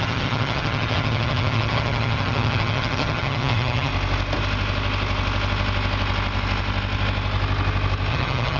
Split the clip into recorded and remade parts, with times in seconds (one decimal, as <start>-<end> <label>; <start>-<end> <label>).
0.0-3.9 remade; 3.9-8.1 recorded; 8.1-8.6 remade

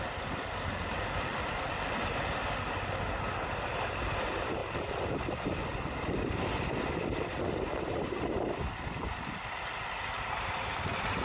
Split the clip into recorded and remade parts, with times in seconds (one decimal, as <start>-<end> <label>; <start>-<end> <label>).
0.0-11.2 recorded

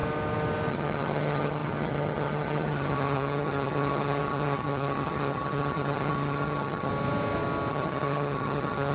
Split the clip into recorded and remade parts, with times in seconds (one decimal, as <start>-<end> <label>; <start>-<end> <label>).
0.0-0.7 recorded; 0.7-6.9 remade; 6.9-7.7 recorded; 7.7-8.9 remade

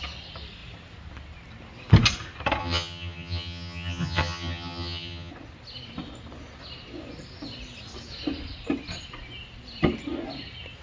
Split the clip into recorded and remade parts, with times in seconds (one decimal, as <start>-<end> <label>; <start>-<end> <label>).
0.0-2.6 recorded; 2.6-5.3 remade; 5.3-10.8 recorded

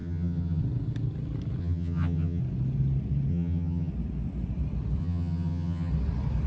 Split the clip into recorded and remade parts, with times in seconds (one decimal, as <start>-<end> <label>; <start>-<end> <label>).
0.0-0.6 remade; 0.6-1.6 recorded; 1.6-2.4 remade; 2.4-3.3 recorded; 3.3-3.9 remade; 3.9-5.0 recorded; 5.0-5.9 remade; 5.9-6.5 recorded